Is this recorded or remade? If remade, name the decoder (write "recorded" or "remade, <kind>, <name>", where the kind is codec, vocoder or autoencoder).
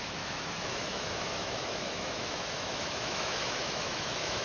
remade, autoencoder, DAC-VAE